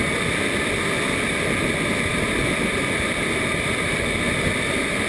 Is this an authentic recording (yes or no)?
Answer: yes